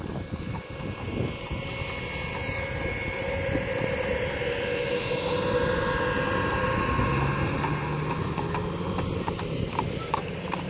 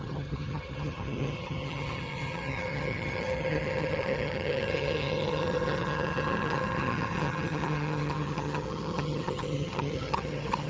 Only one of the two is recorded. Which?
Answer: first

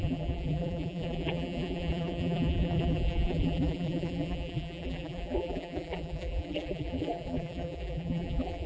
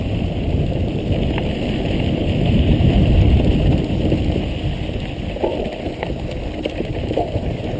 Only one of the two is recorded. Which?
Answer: second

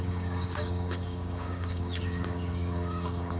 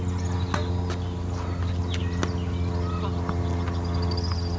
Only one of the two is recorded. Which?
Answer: second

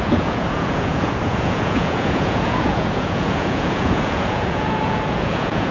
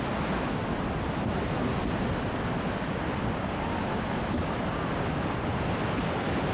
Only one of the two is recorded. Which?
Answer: second